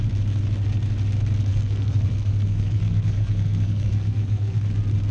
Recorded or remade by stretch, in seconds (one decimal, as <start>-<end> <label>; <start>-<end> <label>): 0.0-1.5 recorded; 1.5-4.6 remade; 4.6-5.1 recorded